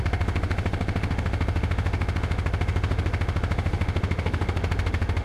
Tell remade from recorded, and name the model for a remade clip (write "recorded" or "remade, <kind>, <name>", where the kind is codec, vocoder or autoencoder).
remade, autoencoder, DAC-VAE